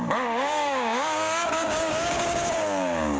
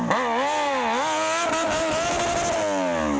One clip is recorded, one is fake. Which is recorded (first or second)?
second